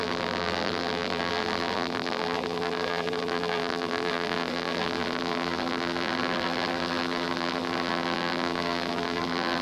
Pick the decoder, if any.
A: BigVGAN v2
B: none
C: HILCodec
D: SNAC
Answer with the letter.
A